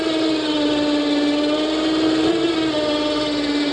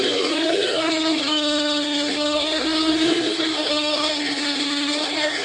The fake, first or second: second